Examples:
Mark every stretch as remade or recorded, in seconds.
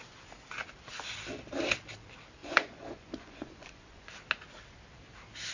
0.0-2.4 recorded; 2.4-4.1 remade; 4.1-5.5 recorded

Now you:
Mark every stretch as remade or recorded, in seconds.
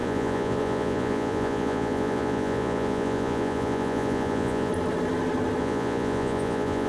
0.0-4.7 remade; 4.7-5.6 recorded; 5.6-6.9 remade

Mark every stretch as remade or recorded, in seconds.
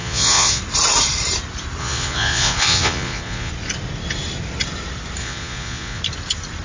0.0-0.6 remade; 0.6-1.8 recorded; 1.8-3.5 remade; 3.5-5.2 recorded; 5.2-6.0 remade; 6.0-6.6 recorded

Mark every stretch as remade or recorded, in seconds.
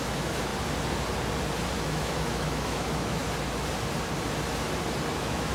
0.0-0.5 remade; 0.5-1.8 recorded; 1.8-3.2 remade; 3.2-5.1 recorded; 5.1-5.5 remade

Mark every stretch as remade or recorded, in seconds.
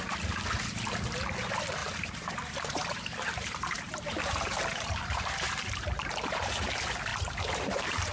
0.0-1.8 recorded; 1.8-6.4 remade; 6.4-7.1 recorded; 7.1-8.1 remade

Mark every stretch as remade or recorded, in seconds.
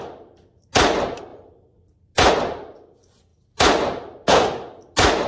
0.0-5.3 recorded